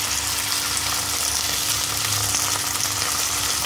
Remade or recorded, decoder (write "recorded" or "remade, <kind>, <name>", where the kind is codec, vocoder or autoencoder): recorded